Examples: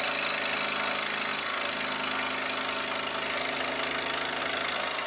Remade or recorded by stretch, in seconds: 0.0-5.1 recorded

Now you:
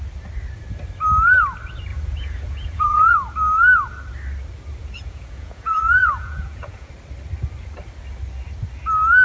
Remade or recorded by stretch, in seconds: 0.0-1.9 recorded; 1.9-3.1 remade; 3.1-4.8 recorded; 4.8-6.9 remade; 6.9-9.2 recorded

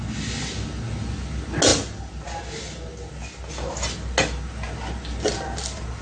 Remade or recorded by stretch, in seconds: 0.0-6.0 recorded